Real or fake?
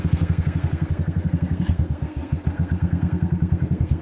fake